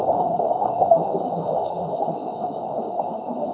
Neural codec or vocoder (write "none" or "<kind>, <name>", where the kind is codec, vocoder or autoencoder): autoencoder, DAC-VAE